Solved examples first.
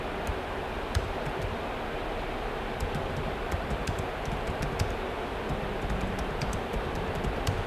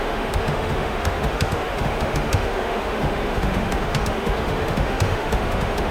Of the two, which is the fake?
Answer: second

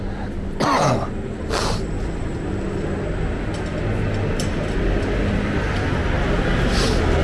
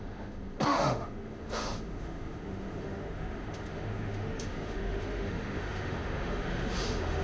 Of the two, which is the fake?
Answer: second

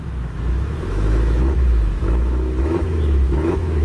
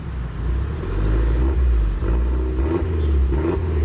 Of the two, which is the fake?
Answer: first